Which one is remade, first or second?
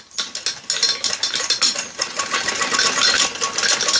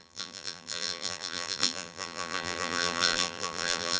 second